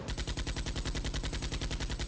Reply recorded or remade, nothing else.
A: recorded